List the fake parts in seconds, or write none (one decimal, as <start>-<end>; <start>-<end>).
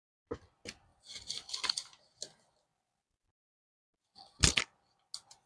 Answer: none